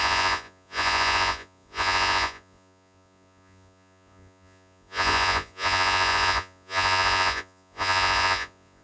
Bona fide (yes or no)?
no